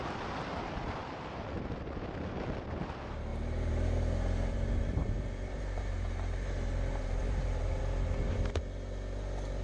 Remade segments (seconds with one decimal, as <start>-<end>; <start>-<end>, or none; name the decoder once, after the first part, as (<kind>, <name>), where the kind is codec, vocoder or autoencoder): 3.3-8.3 (vocoder, BigVGAN v2)